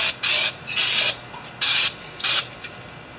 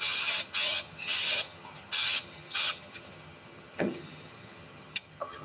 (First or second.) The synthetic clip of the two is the second